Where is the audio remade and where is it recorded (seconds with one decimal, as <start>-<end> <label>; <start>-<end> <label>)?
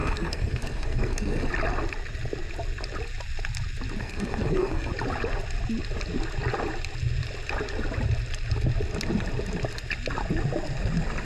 0.0-1.5 remade; 1.5-4.0 recorded; 4.0-4.9 remade; 4.9-11.2 recorded